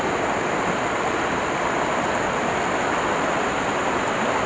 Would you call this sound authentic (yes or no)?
yes